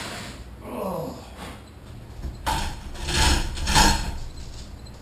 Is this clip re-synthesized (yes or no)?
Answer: no